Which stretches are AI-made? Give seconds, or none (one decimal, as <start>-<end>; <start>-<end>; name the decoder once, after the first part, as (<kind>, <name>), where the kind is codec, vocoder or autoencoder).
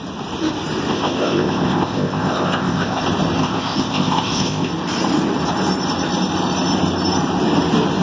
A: 0.9-3.0 (codec, ZipCodec); 3.4-4.7